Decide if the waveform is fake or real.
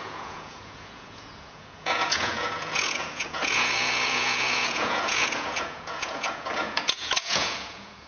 fake